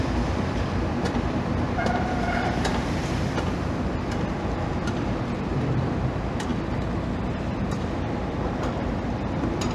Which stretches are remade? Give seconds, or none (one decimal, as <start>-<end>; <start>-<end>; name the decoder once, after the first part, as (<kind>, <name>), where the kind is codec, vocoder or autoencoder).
0.0-6.5 (vocoder, BigVGAN v2); 8.3-9.7